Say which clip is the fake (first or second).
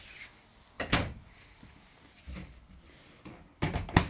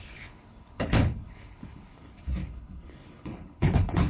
second